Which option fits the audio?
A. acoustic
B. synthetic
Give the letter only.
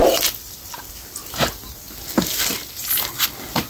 A